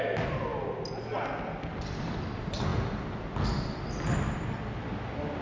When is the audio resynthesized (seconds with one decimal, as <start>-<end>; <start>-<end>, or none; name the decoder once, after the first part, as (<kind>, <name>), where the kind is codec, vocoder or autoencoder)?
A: none